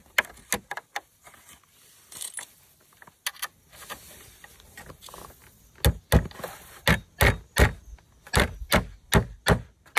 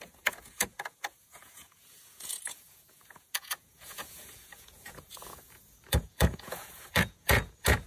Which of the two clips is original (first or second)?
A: first